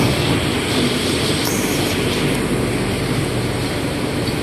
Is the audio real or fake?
real